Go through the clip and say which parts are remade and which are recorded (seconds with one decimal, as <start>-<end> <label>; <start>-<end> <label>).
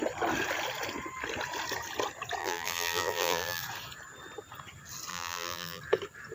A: 0.0-2.4 recorded; 2.4-3.6 remade; 3.6-5.1 recorded; 5.1-5.8 remade; 5.8-6.3 recorded